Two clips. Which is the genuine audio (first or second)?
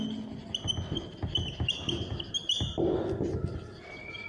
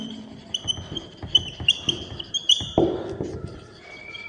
first